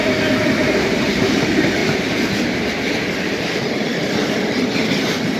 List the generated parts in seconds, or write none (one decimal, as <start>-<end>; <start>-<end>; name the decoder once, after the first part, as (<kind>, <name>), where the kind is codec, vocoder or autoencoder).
0.8-1.8 (vocoder, BigVGAN v2); 3.2-3.9; 4.8-5.4